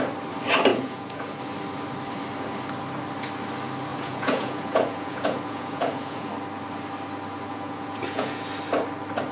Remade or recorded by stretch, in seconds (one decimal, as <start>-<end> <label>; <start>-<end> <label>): 0.0-0.7 recorded; 0.7-1.4 remade; 1.4-3.9 recorded; 3.9-6.3 remade; 6.3-7.5 recorded; 7.5-8.5 remade; 8.5-9.3 recorded